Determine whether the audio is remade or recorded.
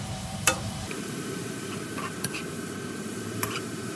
remade